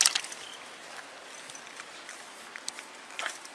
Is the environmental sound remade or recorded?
recorded